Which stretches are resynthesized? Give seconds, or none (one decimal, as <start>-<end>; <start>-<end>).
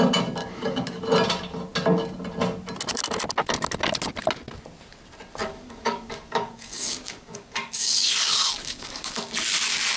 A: 0.4-1.0; 5.4-9.3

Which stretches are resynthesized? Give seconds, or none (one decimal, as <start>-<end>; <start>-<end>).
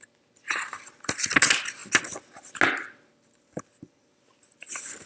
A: none